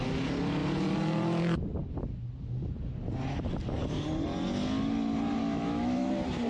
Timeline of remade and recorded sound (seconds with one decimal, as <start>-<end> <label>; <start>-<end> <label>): 0.0-5.4 recorded; 5.4-6.1 remade; 6.1-6.5 recorded